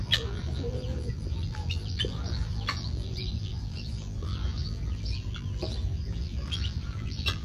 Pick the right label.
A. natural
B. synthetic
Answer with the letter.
B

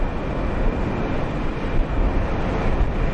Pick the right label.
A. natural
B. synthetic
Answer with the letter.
A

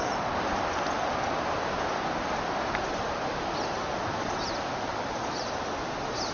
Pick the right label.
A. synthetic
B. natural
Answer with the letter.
B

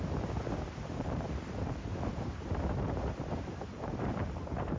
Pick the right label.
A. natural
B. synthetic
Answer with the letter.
B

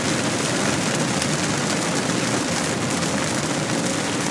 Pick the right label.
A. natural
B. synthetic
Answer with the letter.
A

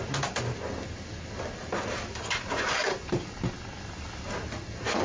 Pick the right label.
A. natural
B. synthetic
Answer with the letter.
A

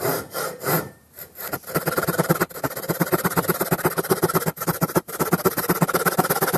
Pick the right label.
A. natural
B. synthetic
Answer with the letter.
B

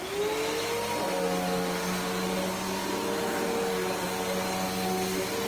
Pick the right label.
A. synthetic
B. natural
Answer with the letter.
B